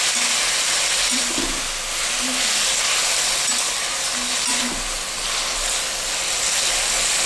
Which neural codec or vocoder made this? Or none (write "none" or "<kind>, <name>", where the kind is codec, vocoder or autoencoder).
none